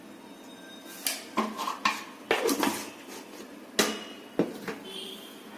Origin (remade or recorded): recorded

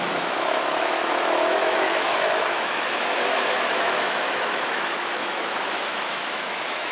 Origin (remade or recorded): remade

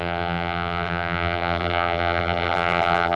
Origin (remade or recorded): remade